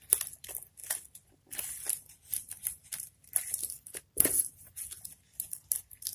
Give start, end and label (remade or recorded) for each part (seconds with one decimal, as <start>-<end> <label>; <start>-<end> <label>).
0.0-6.1 recorded